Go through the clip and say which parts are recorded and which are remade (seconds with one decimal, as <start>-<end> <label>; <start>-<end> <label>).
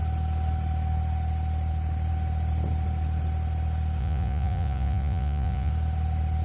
0.0-4.0 recorded; 4.0-5.7 remade; 5.7-6.4 recorded